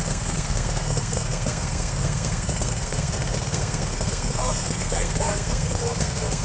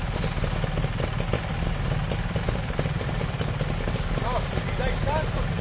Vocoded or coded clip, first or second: first